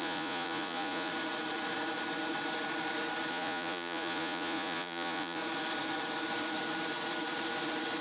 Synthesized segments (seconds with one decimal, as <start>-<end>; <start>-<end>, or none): 0.0-1.1; 3.3-5.4